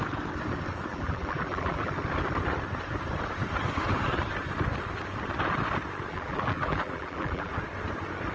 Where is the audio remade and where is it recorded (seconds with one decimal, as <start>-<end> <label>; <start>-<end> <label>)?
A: 0.0-0.9 recorded; 0.9-1.9 remade; 1.9-6.1 recorded; 6.1-7.5 remade; 7.5-8.3 recorded